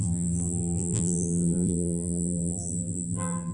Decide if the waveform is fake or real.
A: fake